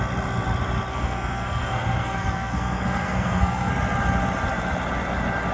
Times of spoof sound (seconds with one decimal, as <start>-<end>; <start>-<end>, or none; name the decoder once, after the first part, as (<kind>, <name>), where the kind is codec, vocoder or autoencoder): 0.9-3.7 (codec, SNAC)